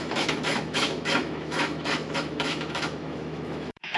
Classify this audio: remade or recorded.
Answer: remade